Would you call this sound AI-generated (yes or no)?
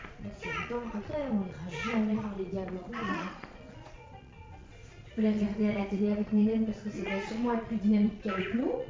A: yes